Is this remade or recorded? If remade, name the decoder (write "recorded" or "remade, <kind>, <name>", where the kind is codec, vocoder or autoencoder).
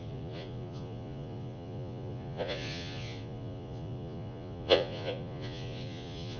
remade, vocoder, Vocos